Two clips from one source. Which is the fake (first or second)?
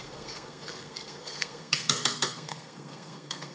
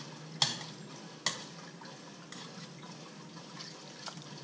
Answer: first